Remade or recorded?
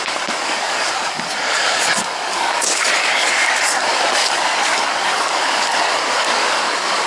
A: remade